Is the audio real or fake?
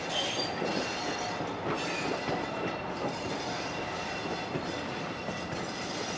real